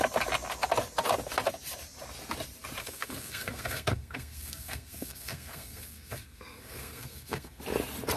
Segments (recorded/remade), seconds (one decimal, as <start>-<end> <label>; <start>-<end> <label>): 0.0-2.8 recorded; 2.8-7.6 remade; 7.6-8.2 recorded